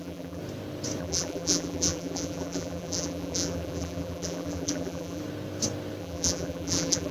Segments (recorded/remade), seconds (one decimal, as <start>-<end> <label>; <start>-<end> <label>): 0.0-0.4 remade; 0.4-1.0 recorded; 1.0-5.2 remade; 5.2-6.0 recorded; 6.0-7.1 remade